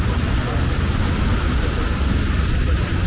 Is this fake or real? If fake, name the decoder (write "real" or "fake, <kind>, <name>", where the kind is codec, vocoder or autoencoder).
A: real